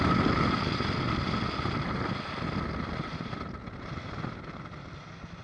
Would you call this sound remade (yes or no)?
no